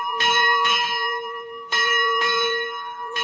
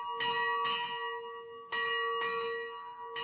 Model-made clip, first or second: first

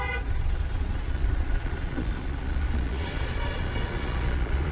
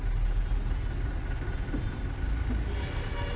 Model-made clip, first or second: first